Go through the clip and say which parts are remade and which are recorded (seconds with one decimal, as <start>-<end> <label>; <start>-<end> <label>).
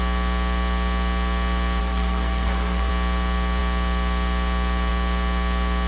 0.0-1.8 recorded; 1.8-2.9 remade; 2.9-5.9 recorded